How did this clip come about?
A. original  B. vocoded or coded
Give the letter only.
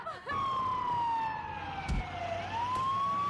A